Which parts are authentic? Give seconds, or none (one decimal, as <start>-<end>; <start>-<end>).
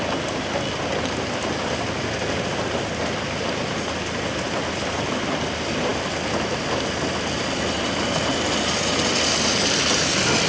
0.0-10.5